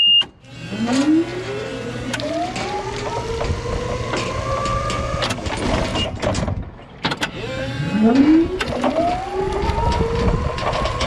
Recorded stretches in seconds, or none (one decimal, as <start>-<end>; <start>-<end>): 0.0-1.3; 2.3-5.9; 9.1-11.1